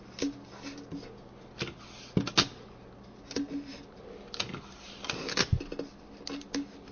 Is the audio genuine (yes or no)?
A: yes